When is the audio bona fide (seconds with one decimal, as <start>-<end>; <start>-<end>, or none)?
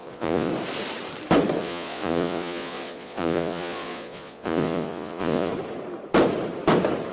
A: 0.5-1.6; 5.5-7.1